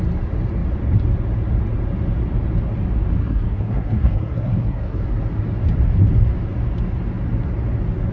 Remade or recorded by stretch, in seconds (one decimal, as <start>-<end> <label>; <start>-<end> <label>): 0.0-3.2 recorded; 3.2-5.0 remade; 5.0-8.1 recorded